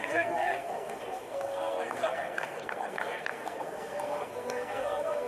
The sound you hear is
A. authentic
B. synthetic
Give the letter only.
B